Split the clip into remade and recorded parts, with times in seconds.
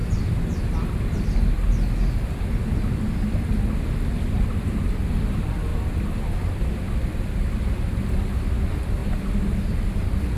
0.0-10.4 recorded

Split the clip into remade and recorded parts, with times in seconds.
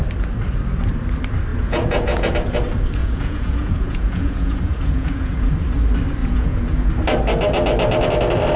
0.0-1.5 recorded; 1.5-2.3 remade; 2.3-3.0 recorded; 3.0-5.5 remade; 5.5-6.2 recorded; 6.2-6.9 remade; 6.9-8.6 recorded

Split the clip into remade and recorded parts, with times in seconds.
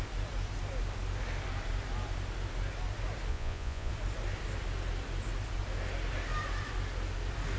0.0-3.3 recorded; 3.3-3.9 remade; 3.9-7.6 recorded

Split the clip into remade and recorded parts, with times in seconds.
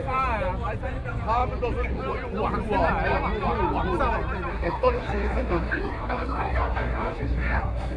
0.0-4.5 recorded; 4.5-8.0 remade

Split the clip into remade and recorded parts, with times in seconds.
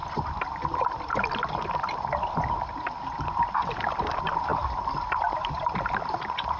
0.0-6.6 recorded